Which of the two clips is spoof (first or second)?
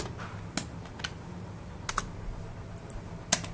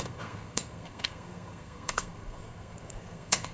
second